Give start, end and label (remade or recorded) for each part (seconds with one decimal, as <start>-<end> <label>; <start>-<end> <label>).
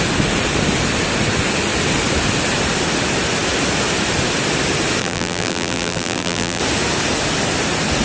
0.0-5.0 recorded; 5.0-6.6 remade; 6.6-8.0 recorded